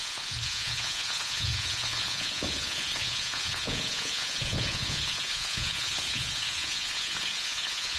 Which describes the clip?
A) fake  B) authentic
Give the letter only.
A